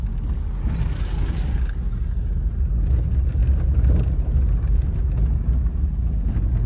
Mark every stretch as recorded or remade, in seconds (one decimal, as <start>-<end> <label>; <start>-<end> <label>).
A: 0.0-6.7 recorded